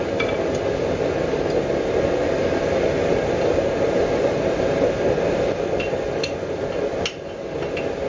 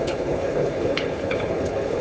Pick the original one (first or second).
first